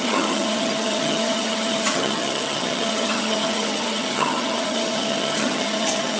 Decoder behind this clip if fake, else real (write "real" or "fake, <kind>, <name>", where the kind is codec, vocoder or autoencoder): fake, vocoder, HiFi-GAN